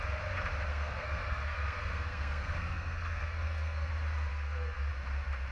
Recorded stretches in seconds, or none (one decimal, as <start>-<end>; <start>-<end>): 0.0-0.7; 3.9-4.3; 4.9-5.5